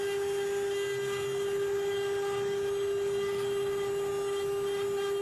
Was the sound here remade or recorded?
recorded